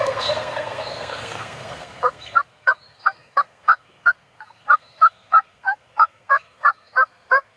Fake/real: fake